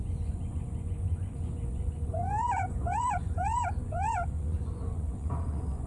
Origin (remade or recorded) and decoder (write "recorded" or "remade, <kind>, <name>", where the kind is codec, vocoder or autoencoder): remade, vocoder, Vocos